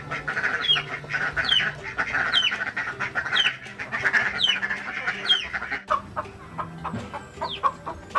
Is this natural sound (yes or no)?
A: yes